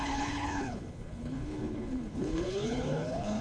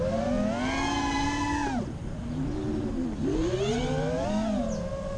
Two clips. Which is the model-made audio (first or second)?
first